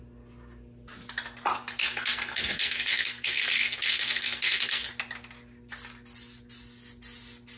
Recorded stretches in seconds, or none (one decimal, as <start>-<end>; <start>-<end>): 0.0-1.8; 4.9-7.6

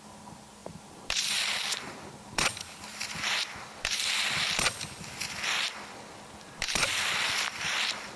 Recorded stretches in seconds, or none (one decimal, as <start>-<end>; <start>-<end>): 0.0-8.2

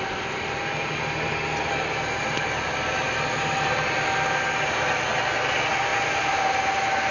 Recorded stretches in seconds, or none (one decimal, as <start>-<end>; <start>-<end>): 0.0-7.1